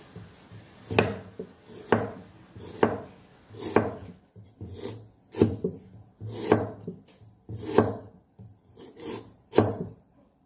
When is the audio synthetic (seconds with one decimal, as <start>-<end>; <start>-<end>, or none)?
8.3-10.5